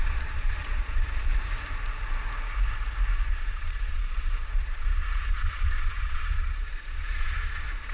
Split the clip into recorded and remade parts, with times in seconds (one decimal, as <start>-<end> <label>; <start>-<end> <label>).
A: 0.0-1.3 remade; 1.3-3.3 recorded; 3.3-7.9 remade